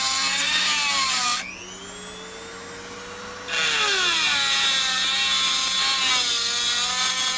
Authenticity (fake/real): real